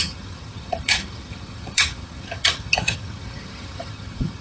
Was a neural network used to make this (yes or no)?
yes